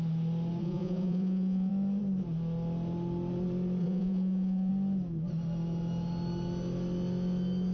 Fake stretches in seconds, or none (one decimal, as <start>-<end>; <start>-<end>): 0.6-1.7; 3.8-4.7